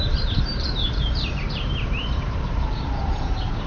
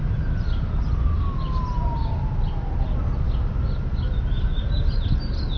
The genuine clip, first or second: second